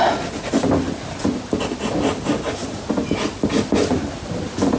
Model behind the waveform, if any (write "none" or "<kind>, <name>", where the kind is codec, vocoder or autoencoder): none